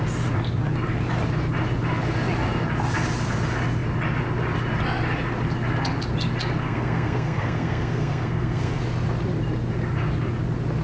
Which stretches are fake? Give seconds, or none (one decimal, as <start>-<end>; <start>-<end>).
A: 6.6-8.8